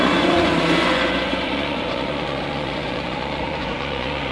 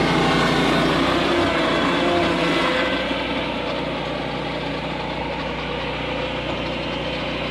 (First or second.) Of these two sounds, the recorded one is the second